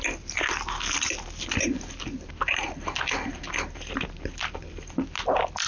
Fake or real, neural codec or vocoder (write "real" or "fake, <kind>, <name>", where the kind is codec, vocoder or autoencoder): real